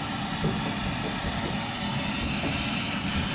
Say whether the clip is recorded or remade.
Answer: recorded